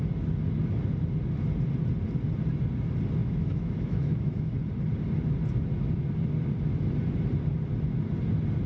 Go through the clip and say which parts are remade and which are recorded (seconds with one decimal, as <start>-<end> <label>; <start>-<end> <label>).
0.0-3.2 recorded; 3.2-4.5 remade; 4.5-8.7 recorded